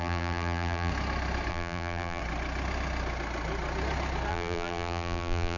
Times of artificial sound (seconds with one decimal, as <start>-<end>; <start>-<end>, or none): 0.0-0.9; 1.5-2.2; 4.3-5.6

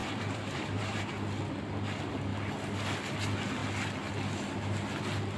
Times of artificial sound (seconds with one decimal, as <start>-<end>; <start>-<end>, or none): 0.0-1.1

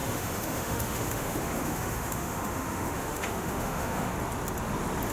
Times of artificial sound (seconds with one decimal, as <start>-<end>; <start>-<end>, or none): 0.0-4.1

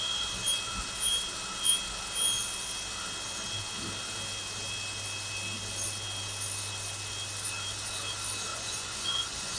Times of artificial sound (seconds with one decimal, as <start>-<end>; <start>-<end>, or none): 8.5-9.6

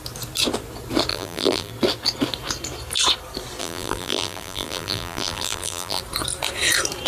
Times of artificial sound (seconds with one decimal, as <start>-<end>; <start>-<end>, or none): 1.1-1.7; 3.6-6.0

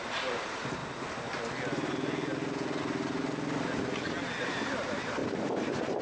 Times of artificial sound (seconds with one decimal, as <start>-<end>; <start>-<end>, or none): 0.0-0.8; 4.4-6.0